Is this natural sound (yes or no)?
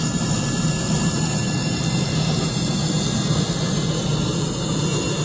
no